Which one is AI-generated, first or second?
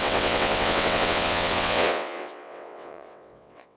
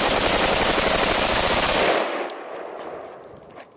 first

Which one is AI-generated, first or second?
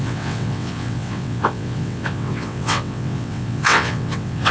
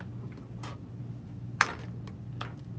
first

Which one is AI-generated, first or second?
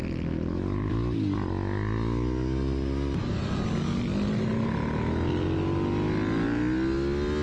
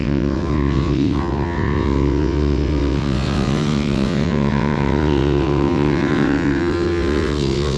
second